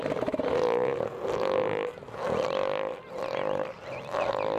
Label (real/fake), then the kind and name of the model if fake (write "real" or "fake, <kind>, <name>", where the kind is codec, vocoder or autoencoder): real